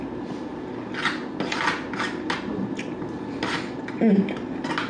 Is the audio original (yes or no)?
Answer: yes